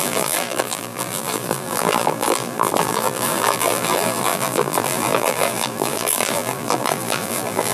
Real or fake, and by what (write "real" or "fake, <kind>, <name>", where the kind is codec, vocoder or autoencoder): fake, vocoder, BigVGAN v2